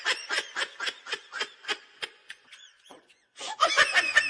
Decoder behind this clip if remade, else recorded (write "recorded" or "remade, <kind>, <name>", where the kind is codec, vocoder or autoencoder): remade, vocoder, Vocos